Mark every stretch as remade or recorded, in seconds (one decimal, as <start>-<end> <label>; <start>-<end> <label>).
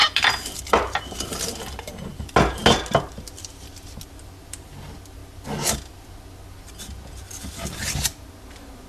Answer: 0.0-8.9 recorded